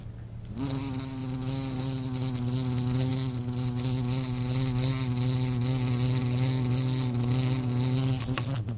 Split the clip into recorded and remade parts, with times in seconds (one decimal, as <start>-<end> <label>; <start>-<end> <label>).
0.0-8.8 recorded